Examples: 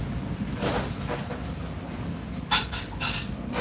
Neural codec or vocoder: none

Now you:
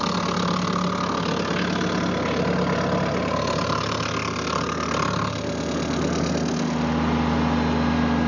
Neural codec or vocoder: none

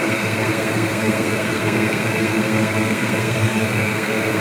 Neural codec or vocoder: codec, SNAC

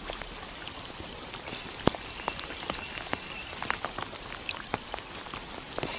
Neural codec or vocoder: none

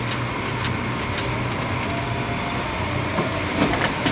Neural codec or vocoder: none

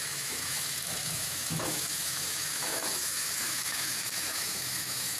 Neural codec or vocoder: autoencoder, DAC-VAE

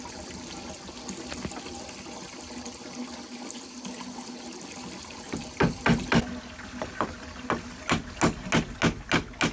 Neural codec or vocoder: none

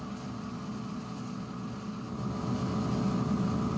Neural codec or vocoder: none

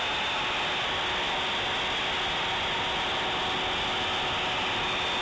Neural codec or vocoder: none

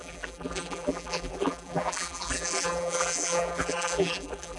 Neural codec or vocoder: vocoder, BigVGAN v2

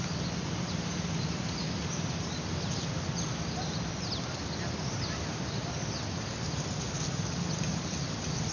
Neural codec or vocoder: none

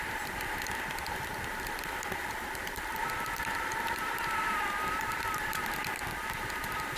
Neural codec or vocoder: vocoder, BigVGAN v2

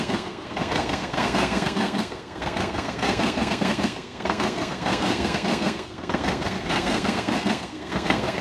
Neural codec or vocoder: codec, SNAC